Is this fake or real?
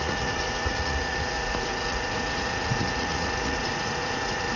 fake